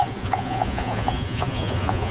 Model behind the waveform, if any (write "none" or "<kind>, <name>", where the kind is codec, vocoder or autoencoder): vocoder, Vocos